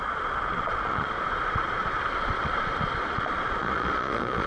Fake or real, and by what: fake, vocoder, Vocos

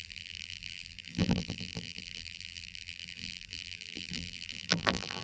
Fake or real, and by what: fake, vocoder, BigVGAN v2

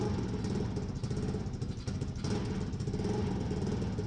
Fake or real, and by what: real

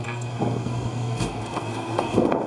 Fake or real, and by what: fake, codec, SNAC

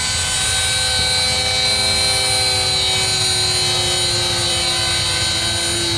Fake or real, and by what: real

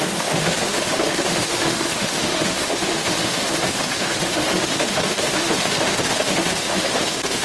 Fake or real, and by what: fake, autoencoder, DAC-VAE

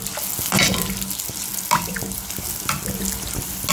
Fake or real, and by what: real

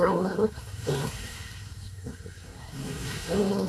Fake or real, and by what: fake, codec, SNAC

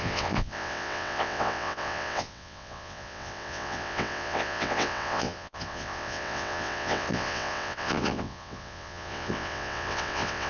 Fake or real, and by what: fake, vocoder, WaveNeXt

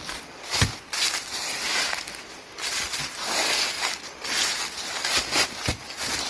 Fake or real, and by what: real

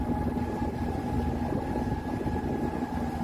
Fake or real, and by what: real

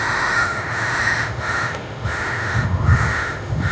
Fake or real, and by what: fake, autoencoder, DAC-VAE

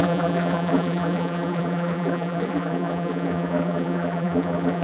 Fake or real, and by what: fake, vocoder, BigVGAN v2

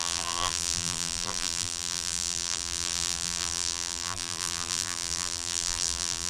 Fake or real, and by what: fake, vocoder, BigVGAN v2